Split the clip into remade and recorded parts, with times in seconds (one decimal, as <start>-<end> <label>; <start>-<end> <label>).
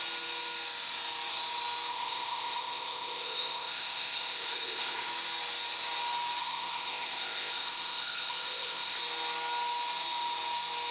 0.0-1.9 recorded; 1.9-5.1 remade; 5.1-6.4 recorded; 6.4-9.0 remade; 9.0-10.9 recorded